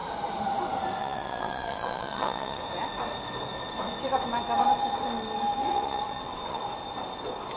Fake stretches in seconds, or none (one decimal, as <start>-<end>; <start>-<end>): 1.0-2.6; 5.6-6.6